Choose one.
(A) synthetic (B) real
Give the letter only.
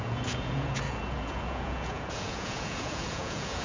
A